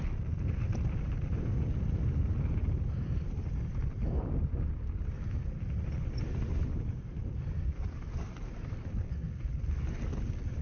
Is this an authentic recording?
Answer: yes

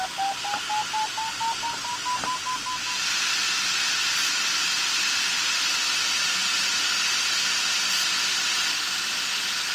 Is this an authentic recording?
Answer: yes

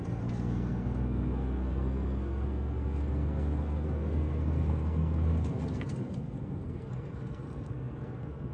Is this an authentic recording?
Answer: no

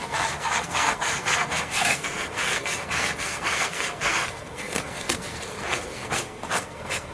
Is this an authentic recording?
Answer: no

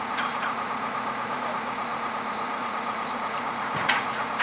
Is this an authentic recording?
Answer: no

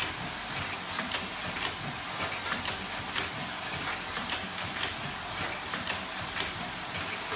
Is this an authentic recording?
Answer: yes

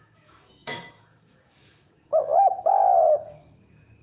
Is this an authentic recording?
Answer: no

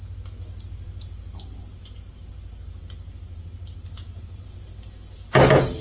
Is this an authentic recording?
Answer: yes